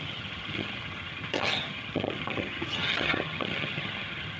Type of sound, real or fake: fake